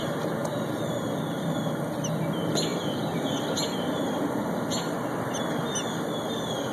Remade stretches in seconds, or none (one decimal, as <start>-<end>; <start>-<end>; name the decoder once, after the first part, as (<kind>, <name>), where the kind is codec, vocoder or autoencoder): 2.7-5.2 (vocoder, BigVGAN v2)